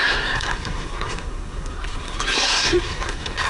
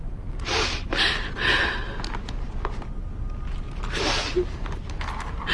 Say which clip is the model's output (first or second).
first